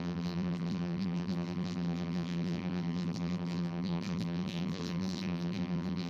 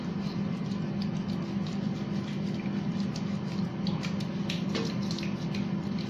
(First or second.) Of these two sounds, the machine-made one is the first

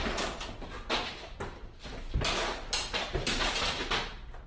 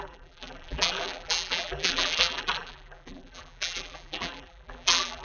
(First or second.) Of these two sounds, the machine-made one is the second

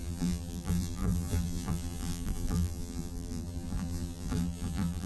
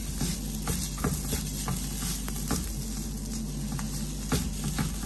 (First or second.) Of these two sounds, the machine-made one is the first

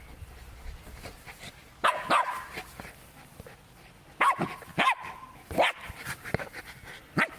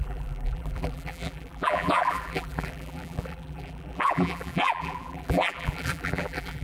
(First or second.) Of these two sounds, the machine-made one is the second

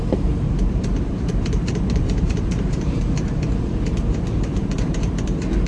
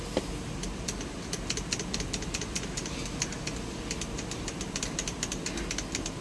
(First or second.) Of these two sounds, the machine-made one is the first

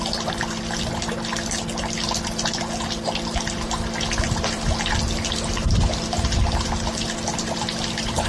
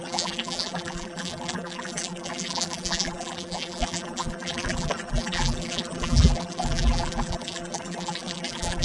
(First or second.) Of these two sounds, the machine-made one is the second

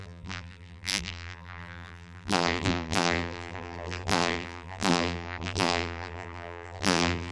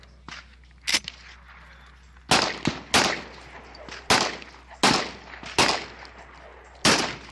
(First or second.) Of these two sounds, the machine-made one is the first